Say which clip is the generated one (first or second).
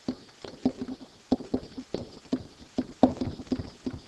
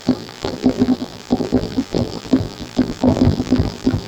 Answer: second